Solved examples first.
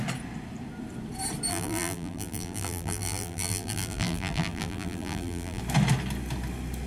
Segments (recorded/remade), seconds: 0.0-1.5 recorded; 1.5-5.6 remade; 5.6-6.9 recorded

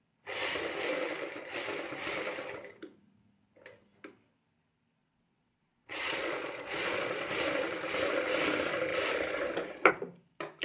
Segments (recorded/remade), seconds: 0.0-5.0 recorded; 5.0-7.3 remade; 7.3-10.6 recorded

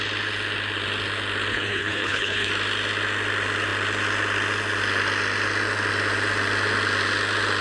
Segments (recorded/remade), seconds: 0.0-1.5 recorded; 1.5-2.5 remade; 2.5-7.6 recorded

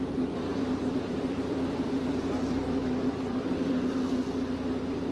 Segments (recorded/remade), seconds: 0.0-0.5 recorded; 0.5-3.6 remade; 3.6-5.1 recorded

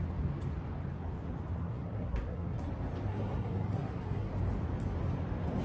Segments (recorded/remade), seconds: 0.0-1.6 recorded; 1.6-2.7 remade; 2.7-3.1 recorded; 3.1-4.3 remade; 4.3-5.6 recorded

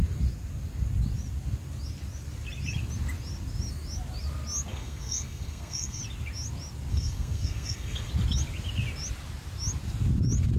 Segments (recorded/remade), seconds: 0.0-4.7 recorded; 4.7-6.0 remade; 6.0-6.9 recorded; 6.9-8.1 remade; 8.1-10.6 recorded